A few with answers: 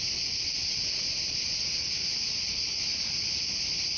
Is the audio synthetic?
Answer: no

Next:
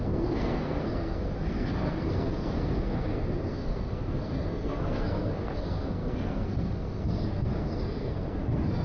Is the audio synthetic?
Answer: yes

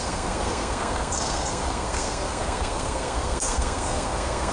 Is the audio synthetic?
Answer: yes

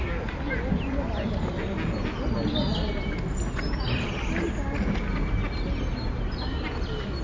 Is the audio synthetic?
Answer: no